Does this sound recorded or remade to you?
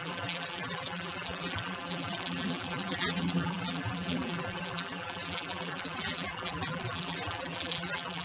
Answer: remade